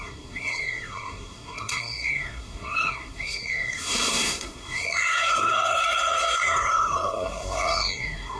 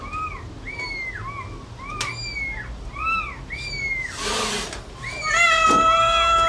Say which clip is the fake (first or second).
first